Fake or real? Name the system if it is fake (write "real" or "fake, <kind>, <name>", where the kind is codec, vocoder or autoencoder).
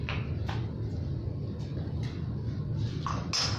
real